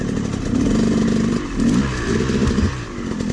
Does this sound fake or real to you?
real